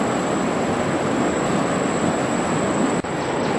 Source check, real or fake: real